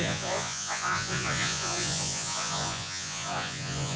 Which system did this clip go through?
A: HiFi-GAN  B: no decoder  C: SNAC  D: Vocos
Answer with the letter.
D